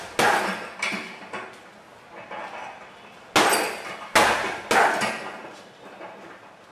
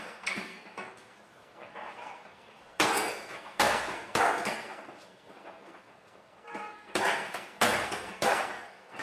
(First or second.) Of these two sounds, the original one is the first